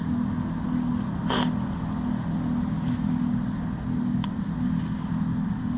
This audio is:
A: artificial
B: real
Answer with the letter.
B